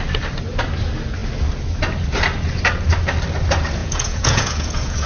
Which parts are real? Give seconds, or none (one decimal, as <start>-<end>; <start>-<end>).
0.0-3.8